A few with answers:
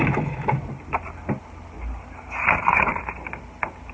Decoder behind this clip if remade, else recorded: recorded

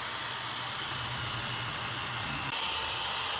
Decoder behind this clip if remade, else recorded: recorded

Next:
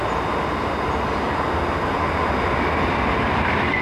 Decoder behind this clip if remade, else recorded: recorded